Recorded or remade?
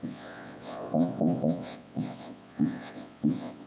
remade